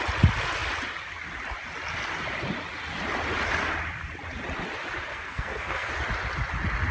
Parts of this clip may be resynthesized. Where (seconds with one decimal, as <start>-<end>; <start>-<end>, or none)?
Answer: 5.1-5.9